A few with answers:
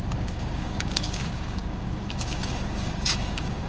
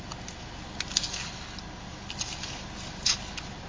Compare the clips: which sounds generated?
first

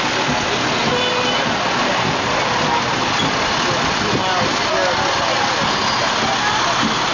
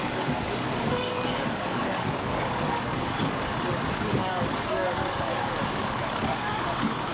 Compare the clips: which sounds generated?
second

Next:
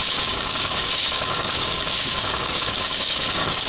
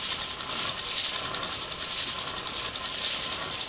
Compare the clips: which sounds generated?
first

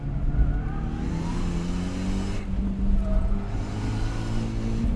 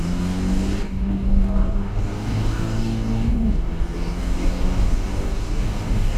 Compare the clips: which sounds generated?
second